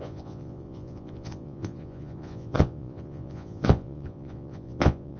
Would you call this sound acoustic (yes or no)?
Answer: no